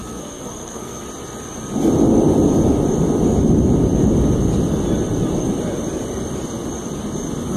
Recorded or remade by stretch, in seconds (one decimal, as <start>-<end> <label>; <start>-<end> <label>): 0.0-1.0 remade; 1.0-7.6 recorded